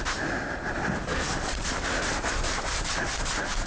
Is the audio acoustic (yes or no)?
yes